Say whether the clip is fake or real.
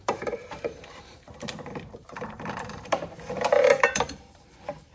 fake